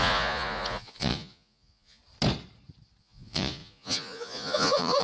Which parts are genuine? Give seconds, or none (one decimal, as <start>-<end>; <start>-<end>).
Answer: 2.0-3.0